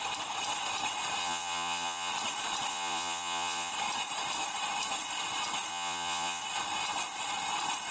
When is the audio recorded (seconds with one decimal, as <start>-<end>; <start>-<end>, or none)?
0.0-1.2; 2.1-2.7; 3.7-5.7; 6.4-7.9